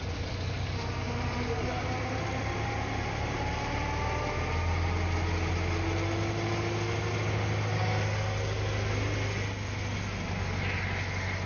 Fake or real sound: real